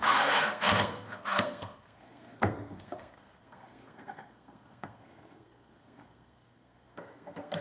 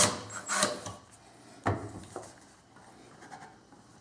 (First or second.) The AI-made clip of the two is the first